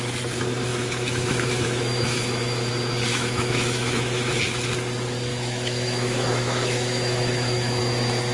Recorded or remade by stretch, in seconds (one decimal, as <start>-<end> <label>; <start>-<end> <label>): 0.0-0.7 recorded; 0.7-2.7 remade; 2.7-3.1 recorded; 3.1-4.4 remade; 4.4-5.3 recorded; 5.3-7.8 remade; 7.8-8.3 recorded